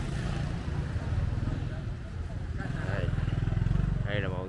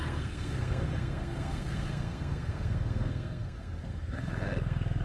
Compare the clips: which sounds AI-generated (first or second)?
second